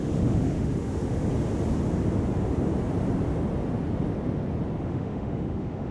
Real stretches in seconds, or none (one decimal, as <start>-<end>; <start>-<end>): 1.3-4.8